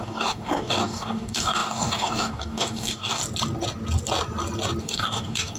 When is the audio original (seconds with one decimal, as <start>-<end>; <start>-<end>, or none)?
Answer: 3.2-4.8